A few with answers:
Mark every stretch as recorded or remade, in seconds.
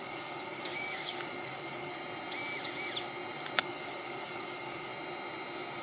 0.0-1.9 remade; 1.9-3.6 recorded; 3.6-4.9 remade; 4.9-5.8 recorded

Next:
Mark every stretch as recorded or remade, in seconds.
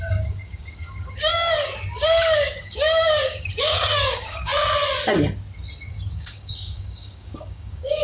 0.0-4.5 remade; 4.5-5.9 recorded; 5.9-8.0 remade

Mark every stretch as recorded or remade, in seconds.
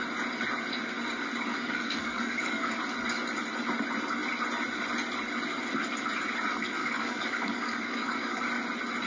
0.0-1.5 recorded; 1.5-2.7 remade; 2.7-6.8 recorded; 6.8-8.4 remade; 8.4-9.1 recorded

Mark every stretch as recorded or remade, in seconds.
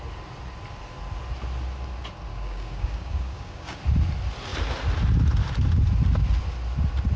0.0-2.3 recorded; 2.3-3.8 remade; 3.8-7.2 recorded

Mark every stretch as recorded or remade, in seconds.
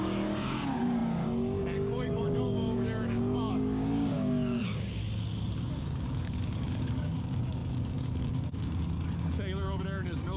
0.0-5.0 remade; 5.0-5.7 recorded; 5.7-10.4 remade